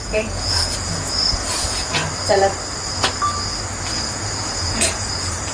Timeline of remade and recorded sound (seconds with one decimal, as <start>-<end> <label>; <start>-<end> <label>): 0.0-2.0 remade; 2.0-3.9 recorded; 3.9-5.5 remade